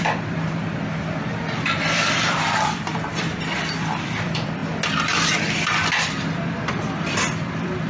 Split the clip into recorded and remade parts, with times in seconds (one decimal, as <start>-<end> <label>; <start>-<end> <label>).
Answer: 0.0-4.6 remade; 4.6-5.3 recorded; 5.3-7.9 remade